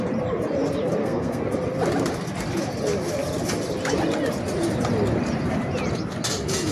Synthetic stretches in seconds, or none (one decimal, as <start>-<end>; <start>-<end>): 1.0-1.5